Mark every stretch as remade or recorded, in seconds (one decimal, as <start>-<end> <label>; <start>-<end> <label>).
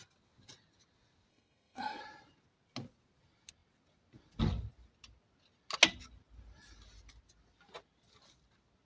0.0-1.3 recorded; 1.3-2.0 remade; 2.0-8.9 recorded